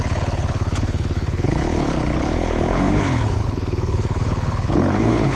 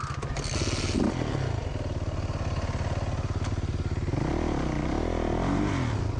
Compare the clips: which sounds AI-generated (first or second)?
first